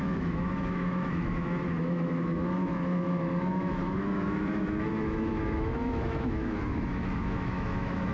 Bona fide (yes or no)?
no